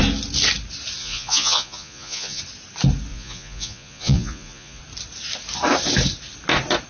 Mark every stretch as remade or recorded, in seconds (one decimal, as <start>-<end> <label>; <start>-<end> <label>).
0.0-1.0 recorded; 1.0-2.4 remade; 2.4-3.1 recorded; 3.1-4.8 remade; 4.8-6.9 recorded